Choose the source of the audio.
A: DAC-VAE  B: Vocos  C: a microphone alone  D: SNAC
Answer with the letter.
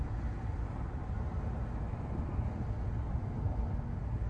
C